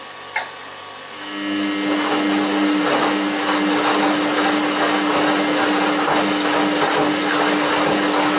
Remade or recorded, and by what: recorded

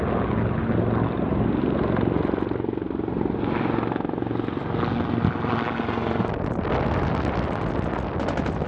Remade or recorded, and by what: recorded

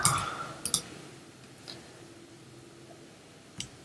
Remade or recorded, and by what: recorded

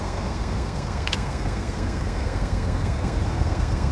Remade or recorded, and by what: remade, codec, SNAC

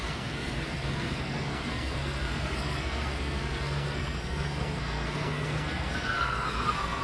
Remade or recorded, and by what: remade, codec, SNAC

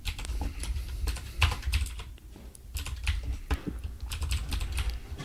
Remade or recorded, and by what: recorded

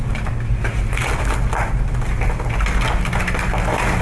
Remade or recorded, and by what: recorded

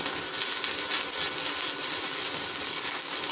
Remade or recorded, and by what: recorded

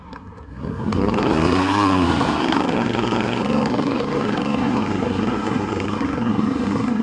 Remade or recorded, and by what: remade, codec, SNAC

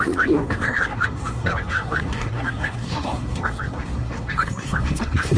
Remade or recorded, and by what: remade, codec, SNAC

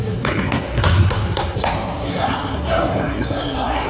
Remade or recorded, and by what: remade, codec, SNAC